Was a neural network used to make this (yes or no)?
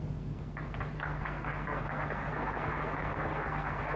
yes